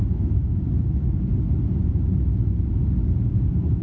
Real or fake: real